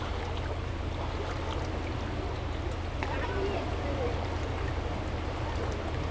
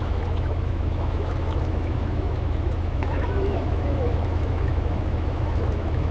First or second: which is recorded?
first